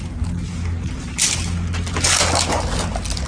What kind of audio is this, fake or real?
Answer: real